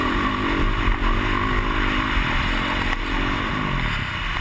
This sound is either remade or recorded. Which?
recorded